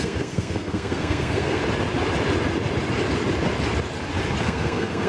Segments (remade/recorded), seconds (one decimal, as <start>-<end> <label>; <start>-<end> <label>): 0.0-1.6 remade; 1.6-4.4 recorded; 4.4-5.1 remade